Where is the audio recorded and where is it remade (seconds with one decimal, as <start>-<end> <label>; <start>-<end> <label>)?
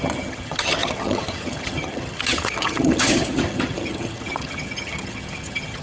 0.0-5.8 remade